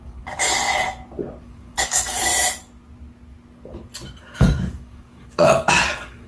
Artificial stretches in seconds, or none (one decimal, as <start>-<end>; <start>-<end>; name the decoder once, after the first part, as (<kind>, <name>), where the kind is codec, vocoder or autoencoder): 0.0-0.5 (codec, DAC); 1.4-2.3; 4.2-6.3